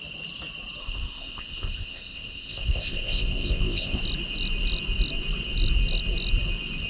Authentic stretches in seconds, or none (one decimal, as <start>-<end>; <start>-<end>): 0.0-0.8; 4.0-6.9